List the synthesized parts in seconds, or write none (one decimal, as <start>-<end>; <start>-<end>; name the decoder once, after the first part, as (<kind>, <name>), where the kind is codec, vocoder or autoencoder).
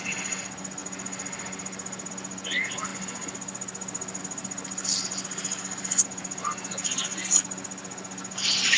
none